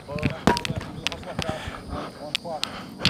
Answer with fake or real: real